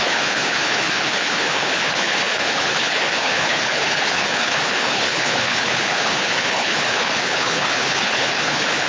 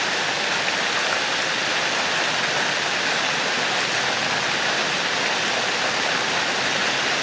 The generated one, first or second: first